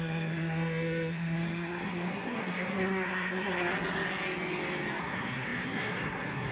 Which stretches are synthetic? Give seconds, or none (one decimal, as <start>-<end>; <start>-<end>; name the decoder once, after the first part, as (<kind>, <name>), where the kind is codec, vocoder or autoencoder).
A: 0.0-3.7 (codec, SNAC); 5.0-6.5